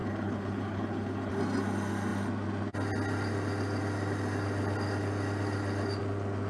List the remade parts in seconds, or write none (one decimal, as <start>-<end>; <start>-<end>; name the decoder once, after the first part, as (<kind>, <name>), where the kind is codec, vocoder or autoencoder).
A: 0.0-1.3 (codec, HILCodec)